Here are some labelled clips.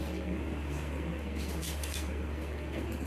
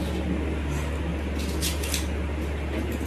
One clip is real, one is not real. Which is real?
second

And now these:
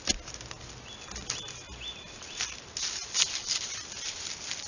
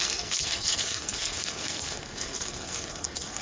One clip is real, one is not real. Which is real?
first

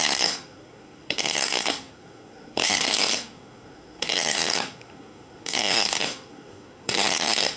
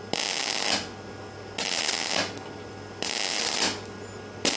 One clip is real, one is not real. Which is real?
second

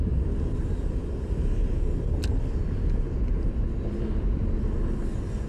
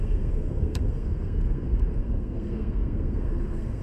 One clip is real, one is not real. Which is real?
first